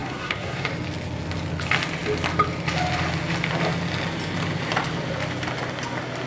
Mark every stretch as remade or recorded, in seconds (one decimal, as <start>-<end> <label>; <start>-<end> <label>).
0.0-0.7 remade; 0.7-6.3 recorded